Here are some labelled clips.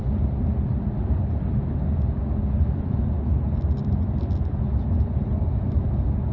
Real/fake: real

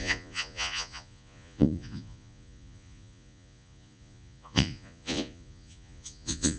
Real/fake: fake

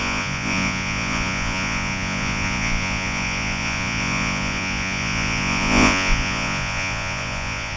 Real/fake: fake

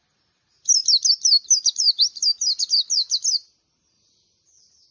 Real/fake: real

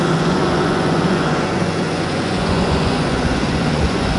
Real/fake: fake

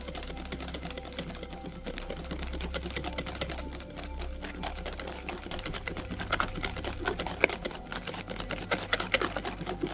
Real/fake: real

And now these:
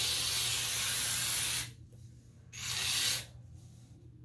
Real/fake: real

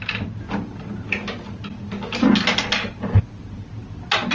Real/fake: real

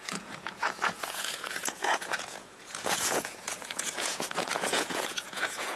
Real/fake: fake